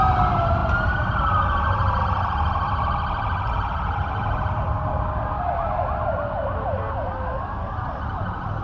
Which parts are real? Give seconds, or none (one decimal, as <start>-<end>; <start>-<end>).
0.0-8.6